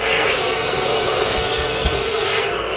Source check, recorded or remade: remade